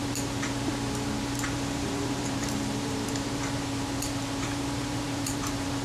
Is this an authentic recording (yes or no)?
no